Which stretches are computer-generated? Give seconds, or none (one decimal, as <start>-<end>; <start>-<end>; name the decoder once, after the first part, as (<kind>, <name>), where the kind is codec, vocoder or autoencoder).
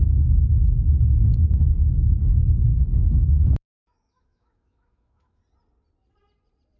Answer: 2.7-5.4 (autoencoder, DAC-VAE)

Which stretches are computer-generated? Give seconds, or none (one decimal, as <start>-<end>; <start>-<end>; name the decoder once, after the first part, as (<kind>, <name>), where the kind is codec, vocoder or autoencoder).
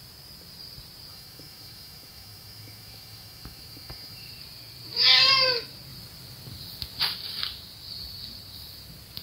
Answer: 1.1-4.3 (autoencoder, DAC-VAE)